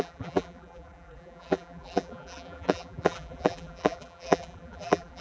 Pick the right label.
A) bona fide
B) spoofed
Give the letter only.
B